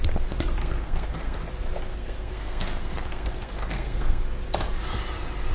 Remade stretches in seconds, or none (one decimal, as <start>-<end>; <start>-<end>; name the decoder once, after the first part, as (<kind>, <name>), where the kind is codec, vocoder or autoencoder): 0.6-1.4 (codec, SNAC); 1.9-4.2